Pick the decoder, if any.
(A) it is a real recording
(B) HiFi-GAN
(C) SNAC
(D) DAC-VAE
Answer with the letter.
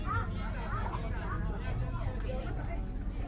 A